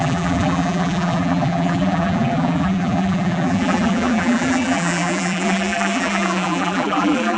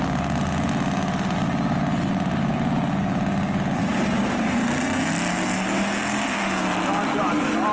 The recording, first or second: second